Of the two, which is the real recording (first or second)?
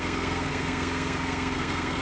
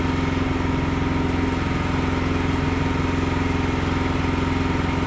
second